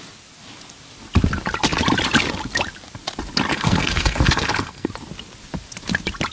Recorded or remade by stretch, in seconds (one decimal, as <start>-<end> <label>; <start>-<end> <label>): 0.0-3.5 recorded; 3.5-4.9 remade; 4.9-6.3 recorded